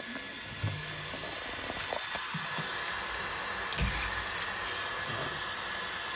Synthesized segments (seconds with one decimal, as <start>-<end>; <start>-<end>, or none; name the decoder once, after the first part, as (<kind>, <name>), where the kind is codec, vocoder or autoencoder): none